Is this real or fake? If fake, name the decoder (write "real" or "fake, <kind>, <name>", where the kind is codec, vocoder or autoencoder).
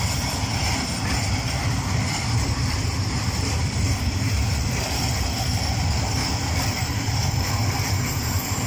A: fake, vocoder, BigVGAN v2